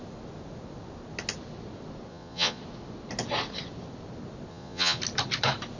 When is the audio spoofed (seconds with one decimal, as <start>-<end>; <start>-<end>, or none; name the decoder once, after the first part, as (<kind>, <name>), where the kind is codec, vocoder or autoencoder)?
2.1-2.6 (vocoder, Vocos); 4.5-5.0